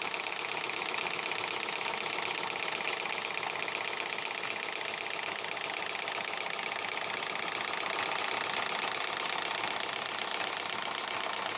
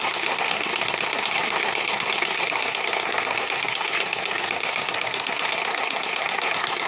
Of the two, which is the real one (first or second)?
first